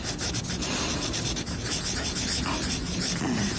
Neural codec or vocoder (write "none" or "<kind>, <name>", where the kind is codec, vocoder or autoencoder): none